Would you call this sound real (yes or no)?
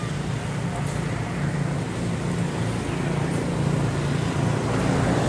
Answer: yes